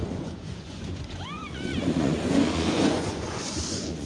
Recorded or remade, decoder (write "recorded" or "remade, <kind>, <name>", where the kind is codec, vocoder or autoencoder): remade, vocoder, Vocos